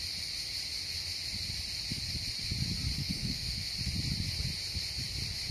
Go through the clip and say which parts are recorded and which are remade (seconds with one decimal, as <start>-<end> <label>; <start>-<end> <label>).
0.0-3.0 recorded; 3.0-3.7 remade; 3.7-5.5 recorded

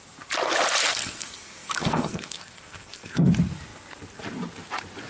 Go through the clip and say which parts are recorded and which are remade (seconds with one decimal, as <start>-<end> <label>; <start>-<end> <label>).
0.0-0.8 recorded; 0.8-3.3 remade; 3.3-5.1 recorded

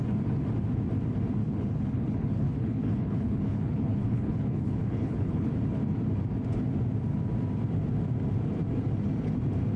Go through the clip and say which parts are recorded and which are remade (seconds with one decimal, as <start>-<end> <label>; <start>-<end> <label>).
0.0-1.4 recorded; 1.4-5.5 remade; 5.5-9.8 recorded

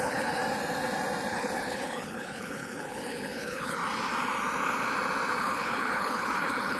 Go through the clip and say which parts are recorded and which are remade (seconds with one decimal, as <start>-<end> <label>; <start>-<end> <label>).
0.0-0.4 remade; 0.4-1.3 recorded; 1.3-3.8 remade; 3.8-5.4 recorded; 5.4-6.8 remade